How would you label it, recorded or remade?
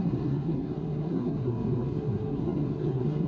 remade